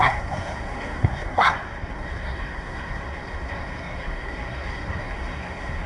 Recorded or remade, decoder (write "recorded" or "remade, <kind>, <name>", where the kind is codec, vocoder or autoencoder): remade, codec, SNAC